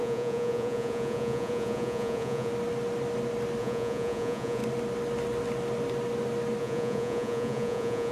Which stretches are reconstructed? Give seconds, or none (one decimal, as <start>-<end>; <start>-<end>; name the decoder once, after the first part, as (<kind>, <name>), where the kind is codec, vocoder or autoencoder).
0.0-2.5 (vocoder, Vocos); 3.6-4.6; 6.6-8.1